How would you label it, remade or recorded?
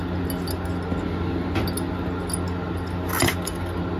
recorded